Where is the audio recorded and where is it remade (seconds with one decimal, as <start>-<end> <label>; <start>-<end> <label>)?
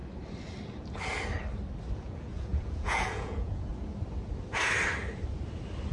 0.0-1.9 recorded; 1.9-3.7 remade; 3.7-5.9 recorded